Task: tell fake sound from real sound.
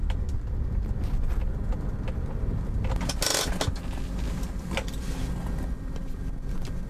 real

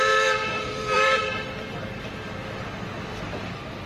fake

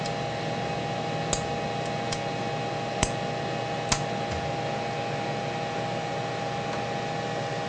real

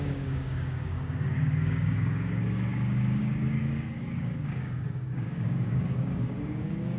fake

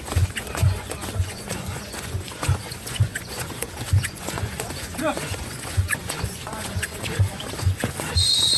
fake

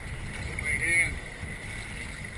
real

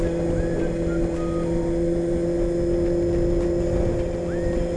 real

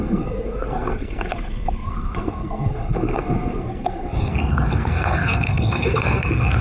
fake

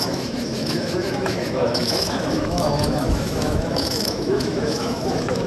fake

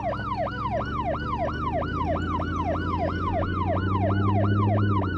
real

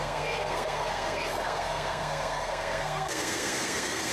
fake